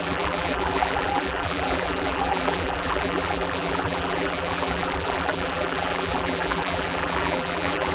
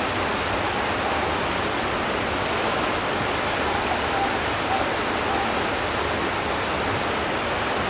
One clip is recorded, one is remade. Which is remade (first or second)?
first